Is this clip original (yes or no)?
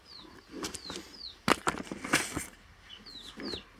yes